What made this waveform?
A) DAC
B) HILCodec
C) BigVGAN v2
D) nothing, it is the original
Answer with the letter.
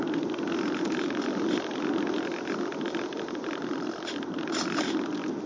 D